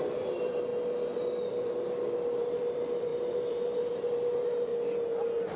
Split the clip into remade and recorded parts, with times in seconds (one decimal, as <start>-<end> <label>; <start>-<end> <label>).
0.0-0.7 remade; 0.7-1.5 recorded; 1.5-4.7 remade; 4.7-5.6 recorded